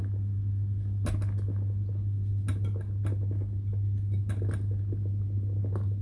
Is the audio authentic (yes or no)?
yes